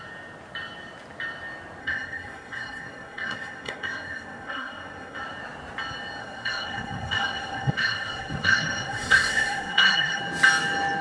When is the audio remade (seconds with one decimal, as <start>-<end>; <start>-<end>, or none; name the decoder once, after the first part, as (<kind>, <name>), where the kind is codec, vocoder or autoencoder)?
1.8-5.2 (codec, SNAC); 6.2-10.2